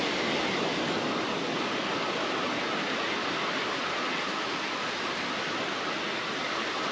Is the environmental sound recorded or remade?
recorded